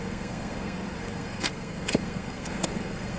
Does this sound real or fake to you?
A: fake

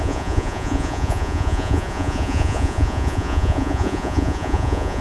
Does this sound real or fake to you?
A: fake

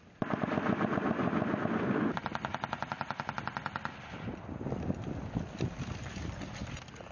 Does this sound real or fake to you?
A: real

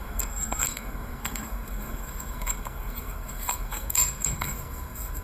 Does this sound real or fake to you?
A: fake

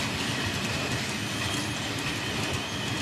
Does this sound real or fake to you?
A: real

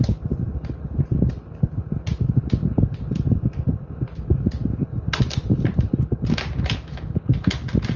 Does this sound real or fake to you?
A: real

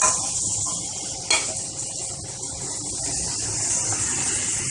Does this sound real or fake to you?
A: real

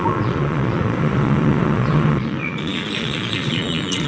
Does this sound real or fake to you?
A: fake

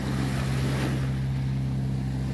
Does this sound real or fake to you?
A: real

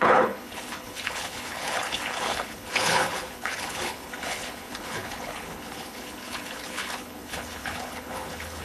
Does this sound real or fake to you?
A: fake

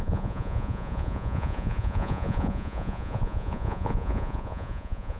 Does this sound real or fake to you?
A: fake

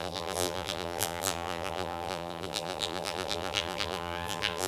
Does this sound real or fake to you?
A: fake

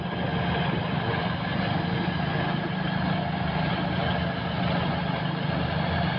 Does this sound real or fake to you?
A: real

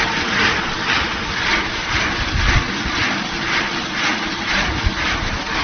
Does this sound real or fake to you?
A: real